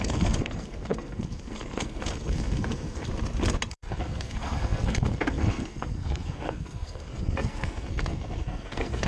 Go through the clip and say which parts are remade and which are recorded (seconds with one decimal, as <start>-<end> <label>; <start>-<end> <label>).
0.0-3.0 remade; 3.0-3.7 recorded; 3.7-9.1 remade